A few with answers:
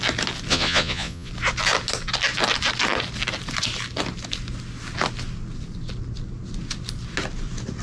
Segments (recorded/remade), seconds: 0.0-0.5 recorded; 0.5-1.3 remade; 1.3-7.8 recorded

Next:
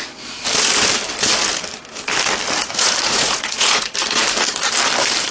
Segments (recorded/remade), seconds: 0.0-2.6 recorded; 2.6-3.9 remade; 3.9-5.3 recorded